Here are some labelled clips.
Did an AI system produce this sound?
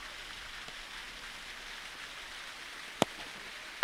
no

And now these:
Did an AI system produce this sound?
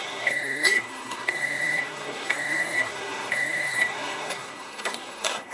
yes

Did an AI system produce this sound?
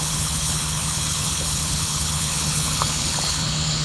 yes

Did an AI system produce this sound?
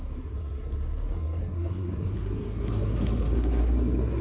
yes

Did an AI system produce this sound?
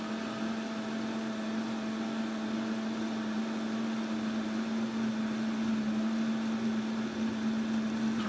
no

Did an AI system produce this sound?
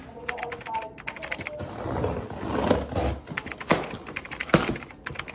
no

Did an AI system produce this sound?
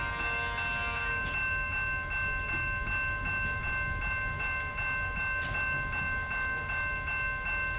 no